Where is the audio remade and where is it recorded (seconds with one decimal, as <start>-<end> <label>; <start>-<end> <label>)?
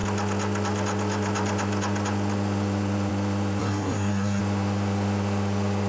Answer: 0.0-3.6 recorded; 3.6-4.4 remade; 4.4-5.9 recorded